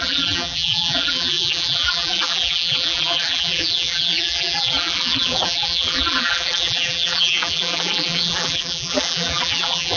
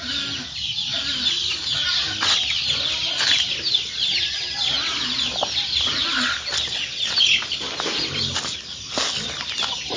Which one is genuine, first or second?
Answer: second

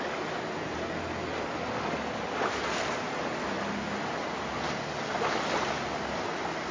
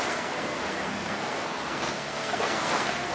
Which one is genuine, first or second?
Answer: first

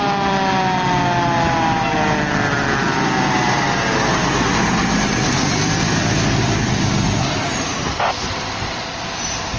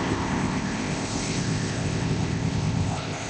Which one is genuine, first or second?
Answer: first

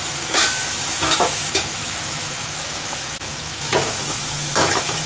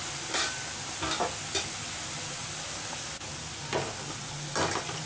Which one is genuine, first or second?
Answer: second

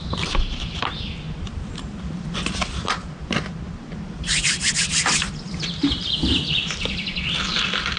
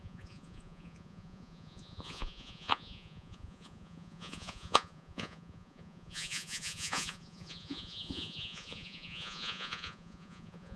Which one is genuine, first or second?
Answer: first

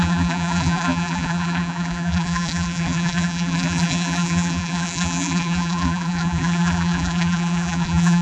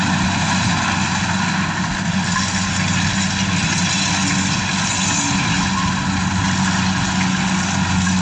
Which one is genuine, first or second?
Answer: second